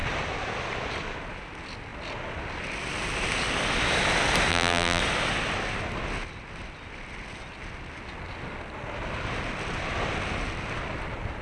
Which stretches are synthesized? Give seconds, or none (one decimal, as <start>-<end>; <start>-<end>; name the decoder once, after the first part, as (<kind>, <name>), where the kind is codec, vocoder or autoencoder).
4.5-5.0 (vocoder, BigVGAN v2)